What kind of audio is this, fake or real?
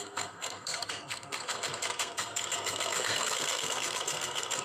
fake